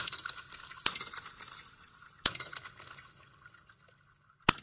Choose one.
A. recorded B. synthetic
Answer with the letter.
A